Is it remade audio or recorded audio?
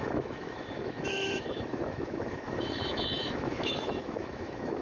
remade